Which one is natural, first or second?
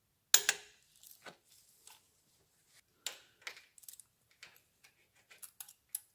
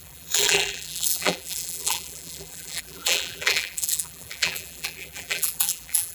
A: first